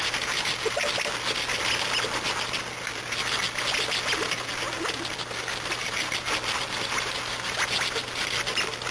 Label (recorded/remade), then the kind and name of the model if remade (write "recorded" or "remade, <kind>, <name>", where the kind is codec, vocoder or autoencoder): recorded